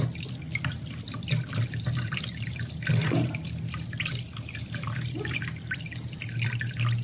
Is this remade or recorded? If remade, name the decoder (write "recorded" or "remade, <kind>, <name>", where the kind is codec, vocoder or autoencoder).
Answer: recorded